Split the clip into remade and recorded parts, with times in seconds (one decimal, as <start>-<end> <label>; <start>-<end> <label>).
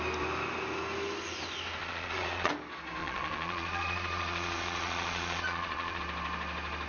0.0-1.8 recorded; 1.8-2.5 remade; 2.5-3.0 recorded; 3.0-6.0 remade; 6.0-6.9 recorded